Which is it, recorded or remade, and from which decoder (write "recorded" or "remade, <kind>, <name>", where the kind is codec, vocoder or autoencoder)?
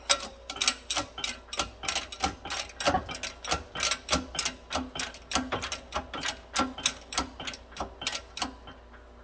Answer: recorded